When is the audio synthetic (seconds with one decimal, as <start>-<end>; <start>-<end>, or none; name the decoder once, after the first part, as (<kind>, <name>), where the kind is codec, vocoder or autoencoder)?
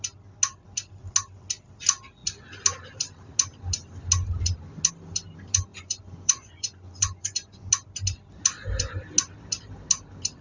5.7-7.7 (vocoder, Vocos)